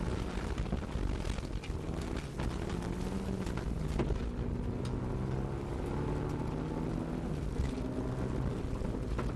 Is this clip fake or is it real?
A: real